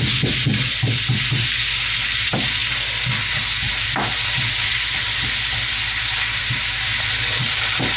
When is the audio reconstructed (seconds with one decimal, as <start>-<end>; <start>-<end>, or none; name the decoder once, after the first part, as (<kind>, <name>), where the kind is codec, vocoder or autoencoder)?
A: 2.6-3.5 (vocoder, BigVGAN v2); 4.7-6.4